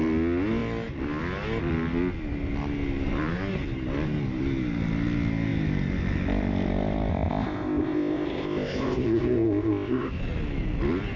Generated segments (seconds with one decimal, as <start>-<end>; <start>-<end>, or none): 7.1-10.2